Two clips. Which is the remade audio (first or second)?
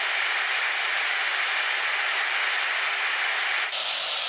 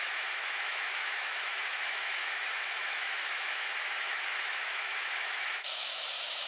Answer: second